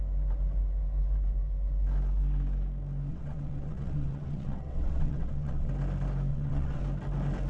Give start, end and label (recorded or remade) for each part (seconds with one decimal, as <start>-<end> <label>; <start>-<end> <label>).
0.0-3.1 recorded; 3.1-5.7 remade; 5.7-6.3 recorded; 6.3-6.8 remade; 6.8-7.5 recorded

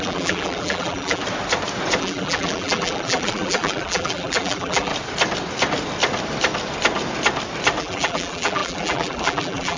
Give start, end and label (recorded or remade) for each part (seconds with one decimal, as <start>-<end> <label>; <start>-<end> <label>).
0.0-1.2 remade; 1.2-2.0 recorded; 2.0-4.9 remade; 4.9-7.8 recorded; 7.8-9.8 remade